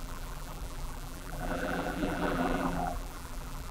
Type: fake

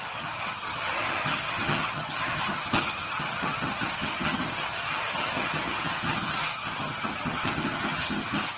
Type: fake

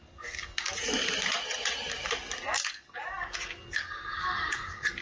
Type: real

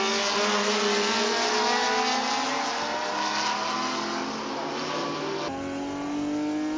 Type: real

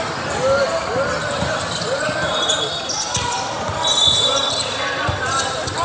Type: real